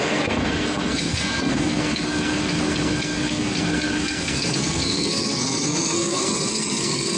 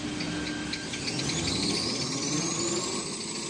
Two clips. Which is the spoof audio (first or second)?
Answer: first